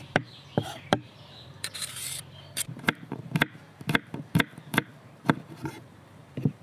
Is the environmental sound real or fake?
fake